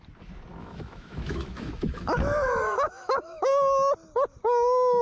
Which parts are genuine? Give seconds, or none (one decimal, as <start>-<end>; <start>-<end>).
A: 0.0-0.5; 3.5-5.0